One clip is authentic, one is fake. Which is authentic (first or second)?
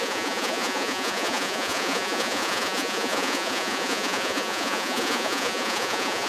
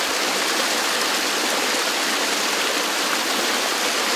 second